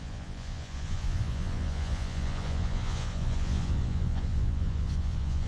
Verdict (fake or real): fake